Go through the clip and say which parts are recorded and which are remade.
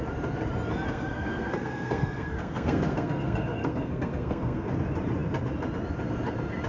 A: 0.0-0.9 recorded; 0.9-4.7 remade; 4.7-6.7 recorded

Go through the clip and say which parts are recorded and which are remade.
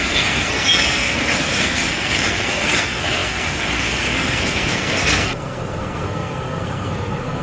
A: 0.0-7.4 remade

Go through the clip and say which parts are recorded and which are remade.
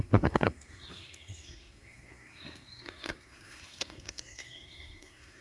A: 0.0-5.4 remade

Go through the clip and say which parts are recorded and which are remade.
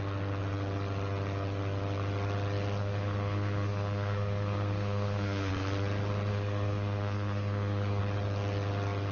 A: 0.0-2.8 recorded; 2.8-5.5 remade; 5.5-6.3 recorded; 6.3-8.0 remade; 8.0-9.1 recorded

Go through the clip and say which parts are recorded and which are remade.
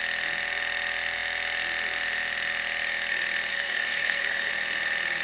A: 0.0-3.5 recorded; 3.5-4.5 remade; 4.5-5.2 recorded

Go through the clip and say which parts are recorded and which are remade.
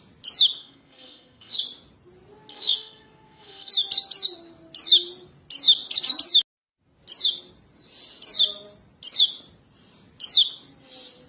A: 0.0-0.6 recorded; 0.6-1.6 remade; 1.6-2.5 recorded; 2.5-3.7 remade; 3.7-11.3 recorded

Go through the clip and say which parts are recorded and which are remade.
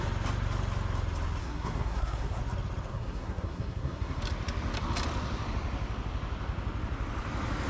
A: 0.0-1.4 recorded; 1.4-2.4 remade; 2.4-2.9 recorded; 2.9-4.2 remade; 4.2-7.7 recorded